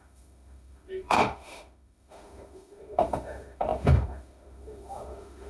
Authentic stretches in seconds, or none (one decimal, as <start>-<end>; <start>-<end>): none